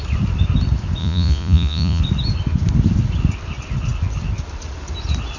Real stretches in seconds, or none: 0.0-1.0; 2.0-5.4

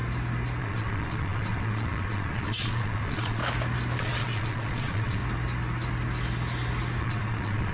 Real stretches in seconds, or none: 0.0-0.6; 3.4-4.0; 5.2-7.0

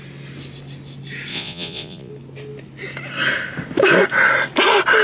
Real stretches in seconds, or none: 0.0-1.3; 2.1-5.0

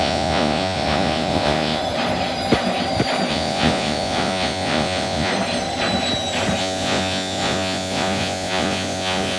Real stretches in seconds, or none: 1.8-3.3; 5.3-6.6